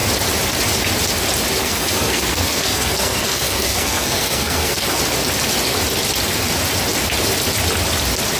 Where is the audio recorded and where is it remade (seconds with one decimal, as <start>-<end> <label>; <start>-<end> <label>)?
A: 0.0-1.6 recorded; 1.6-5.0 remade; 5.0-8.4 recorded